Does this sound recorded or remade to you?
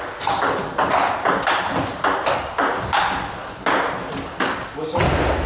recorded